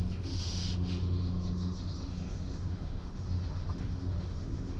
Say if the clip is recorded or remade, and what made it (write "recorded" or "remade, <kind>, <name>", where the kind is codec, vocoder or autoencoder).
remade, autoencoder, DAC-VAE